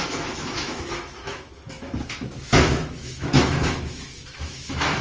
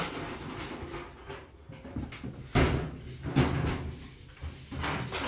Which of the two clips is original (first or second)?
second